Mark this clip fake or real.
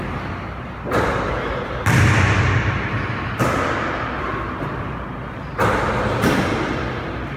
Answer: real